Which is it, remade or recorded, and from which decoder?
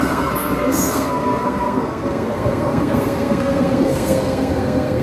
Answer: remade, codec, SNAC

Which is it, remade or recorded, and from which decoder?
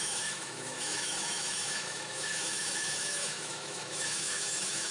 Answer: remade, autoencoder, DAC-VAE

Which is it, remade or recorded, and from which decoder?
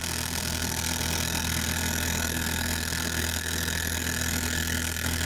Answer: remade, codec, SNAC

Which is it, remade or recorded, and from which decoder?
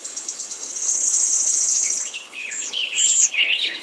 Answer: remade, codec, HILCodec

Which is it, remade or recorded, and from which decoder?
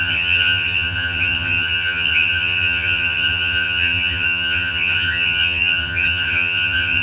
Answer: remade, vocoder, HiFi-GAN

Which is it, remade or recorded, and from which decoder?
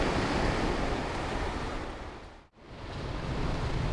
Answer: recorded